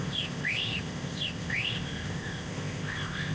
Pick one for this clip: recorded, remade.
remade